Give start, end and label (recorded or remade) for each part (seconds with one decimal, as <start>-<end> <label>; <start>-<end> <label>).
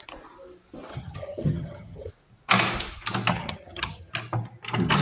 0.0-0.9 recorded; 0.9-2.1 remade; 2.1-3.3 recorded; 3.3-4.1 remade; 4.1-5.0 recorded